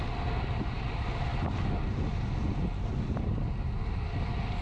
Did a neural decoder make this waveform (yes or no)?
no